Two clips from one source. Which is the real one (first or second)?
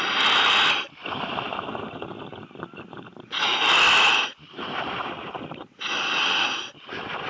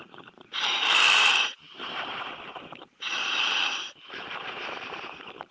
first